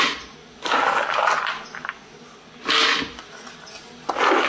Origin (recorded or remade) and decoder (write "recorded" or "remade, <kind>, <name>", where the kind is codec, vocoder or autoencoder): recorded